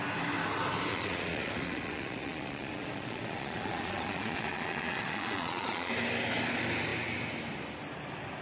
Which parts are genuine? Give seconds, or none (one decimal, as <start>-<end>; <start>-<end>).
0.0-0.9; 5.9-8.4